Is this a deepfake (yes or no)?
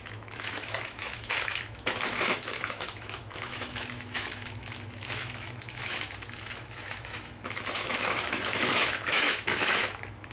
yes